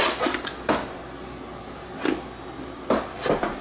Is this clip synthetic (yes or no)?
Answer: no